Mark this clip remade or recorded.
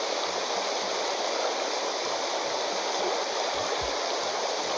recorded